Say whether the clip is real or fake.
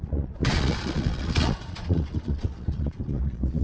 fake